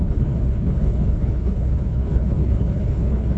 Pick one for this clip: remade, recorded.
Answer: remade